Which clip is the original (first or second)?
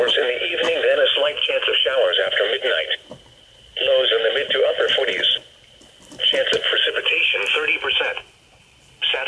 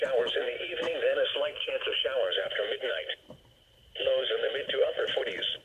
first